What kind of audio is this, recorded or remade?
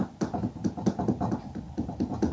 recorded